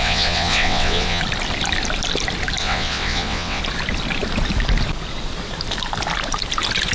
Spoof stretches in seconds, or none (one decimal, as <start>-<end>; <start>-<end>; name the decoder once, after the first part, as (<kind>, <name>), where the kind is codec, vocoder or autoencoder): 0.0-1.2 (vocoder, WaveNeXt); 2.6-3.6